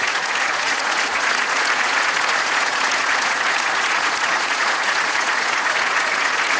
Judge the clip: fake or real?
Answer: fake